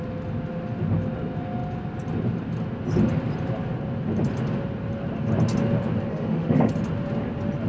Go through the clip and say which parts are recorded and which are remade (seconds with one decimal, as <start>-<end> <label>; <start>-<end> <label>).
0.0-6.1 recorded; 6.1-6.7 remade; 6.7-7.7 recorded